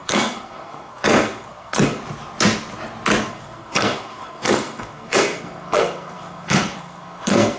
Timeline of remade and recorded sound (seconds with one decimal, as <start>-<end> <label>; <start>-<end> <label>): 0.0-2.0 remade; 2.0-3.3 recorded; 3.3-7.6 remade